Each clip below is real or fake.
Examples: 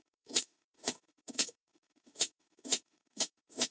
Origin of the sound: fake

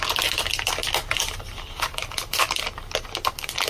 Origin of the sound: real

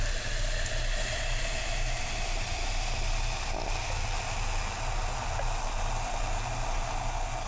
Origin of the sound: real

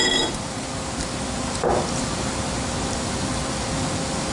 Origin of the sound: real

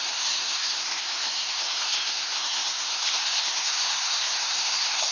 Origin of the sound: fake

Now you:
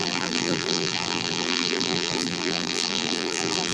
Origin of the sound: fake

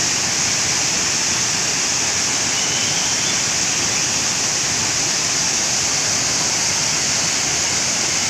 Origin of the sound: real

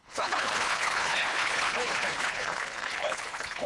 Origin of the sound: fake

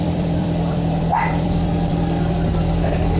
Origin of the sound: fake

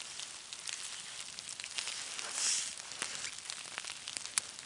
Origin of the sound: real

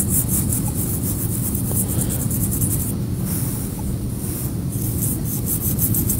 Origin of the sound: real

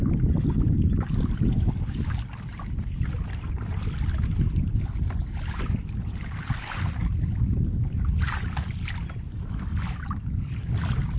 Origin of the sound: real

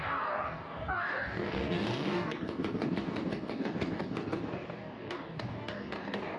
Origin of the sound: fake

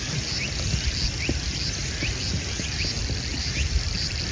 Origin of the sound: real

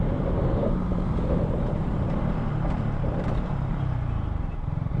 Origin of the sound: fake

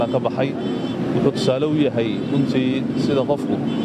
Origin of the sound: real